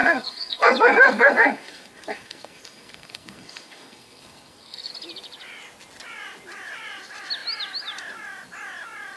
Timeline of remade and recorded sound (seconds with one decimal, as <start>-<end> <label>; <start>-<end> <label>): 0.0-4.9 remade; 4.9-9.2 recorded